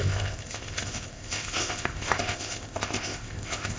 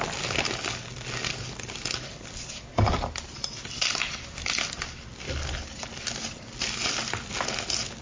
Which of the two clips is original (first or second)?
second